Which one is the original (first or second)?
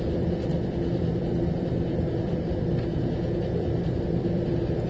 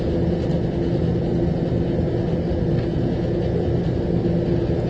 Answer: second